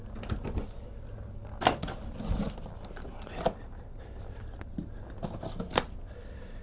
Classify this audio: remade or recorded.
recorded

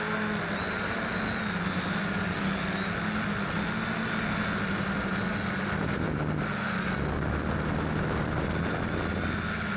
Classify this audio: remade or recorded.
recorded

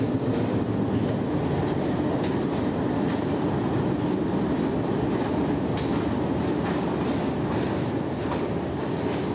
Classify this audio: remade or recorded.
recorded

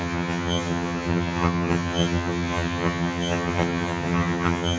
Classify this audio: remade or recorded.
remade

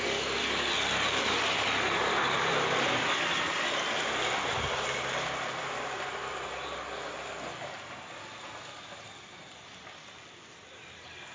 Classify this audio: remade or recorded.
recorded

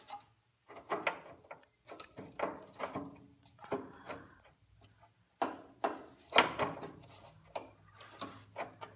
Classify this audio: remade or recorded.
recorded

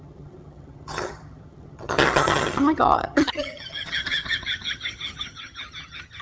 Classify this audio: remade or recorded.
remade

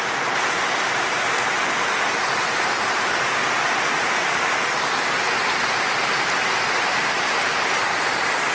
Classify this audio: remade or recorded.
recorded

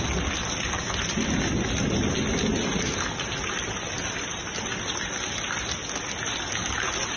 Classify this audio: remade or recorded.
recorded